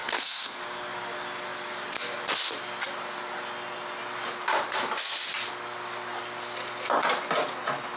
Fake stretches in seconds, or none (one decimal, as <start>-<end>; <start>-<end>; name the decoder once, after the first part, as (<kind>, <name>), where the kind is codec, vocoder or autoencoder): 0.0-0.6 (codec, SNAC)